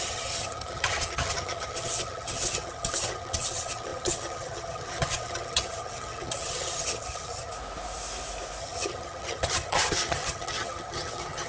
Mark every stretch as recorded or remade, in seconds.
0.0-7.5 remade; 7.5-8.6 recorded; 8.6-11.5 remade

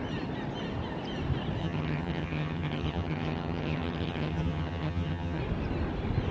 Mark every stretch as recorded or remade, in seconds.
0.0-1.6 recorded; 1.6-5.4 remade; 5.4-6.3 recorded

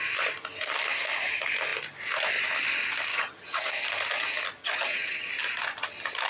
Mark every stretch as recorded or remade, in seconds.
0.0-3.1 recorded; 3.1-3.7 remade; 3.7-4.6 recorded; 4.6-5.3 remade; 5.3-6.3 recorded

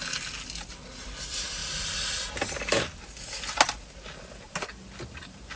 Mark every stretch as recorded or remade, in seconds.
0.0-5.6 recorded

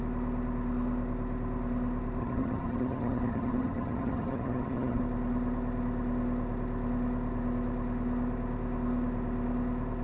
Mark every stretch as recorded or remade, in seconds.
0.0-2.2 recorded; 2.2-5.0 remade; 5.0-10.0 recorded

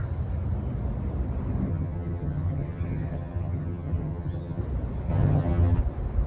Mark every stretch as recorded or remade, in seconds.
0.0-1.7 recorded; 1.7-4.6 remade; 4.6-5.1 recorded; 5.1-5.8 remade; 5.8-6.3 recorded

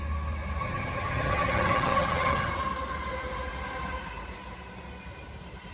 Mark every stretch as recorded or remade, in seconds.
0.0-0.6 recorded; 0.6-2.5 remade; 2.5-5.7 recorded